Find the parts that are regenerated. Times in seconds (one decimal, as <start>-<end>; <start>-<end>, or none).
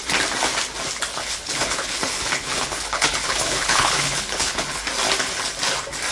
1.1-4.8